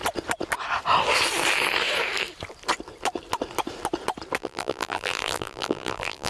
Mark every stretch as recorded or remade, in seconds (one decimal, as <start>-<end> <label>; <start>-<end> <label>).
0.0-4.4 recorded; 4.4-6.3 remade